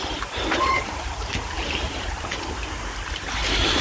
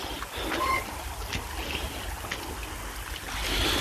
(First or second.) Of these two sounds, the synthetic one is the first